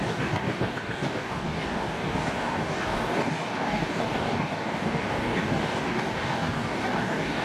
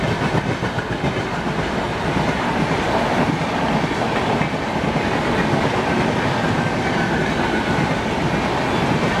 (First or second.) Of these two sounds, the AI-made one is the first